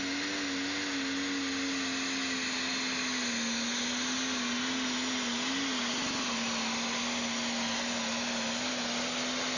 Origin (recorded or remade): recorded